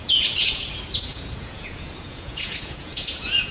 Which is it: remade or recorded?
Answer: remade